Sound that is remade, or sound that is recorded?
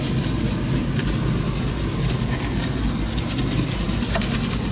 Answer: recorded